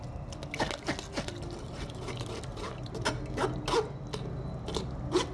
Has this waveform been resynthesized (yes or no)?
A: no